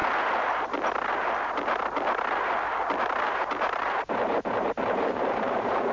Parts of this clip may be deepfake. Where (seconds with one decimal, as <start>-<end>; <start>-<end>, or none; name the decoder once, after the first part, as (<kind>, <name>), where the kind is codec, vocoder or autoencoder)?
3.0-5.9 (vocoder, BigVGAN v2)